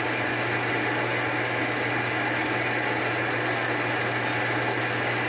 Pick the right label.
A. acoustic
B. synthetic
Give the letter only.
A